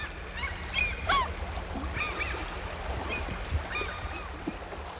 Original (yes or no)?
yes